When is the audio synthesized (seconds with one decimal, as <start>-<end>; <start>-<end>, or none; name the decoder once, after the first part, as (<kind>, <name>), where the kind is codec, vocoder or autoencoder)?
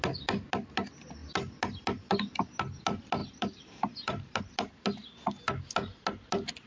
3.2-4.4 (vocoder, BigVGAN v2)